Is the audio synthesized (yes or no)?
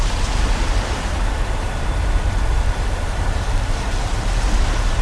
yes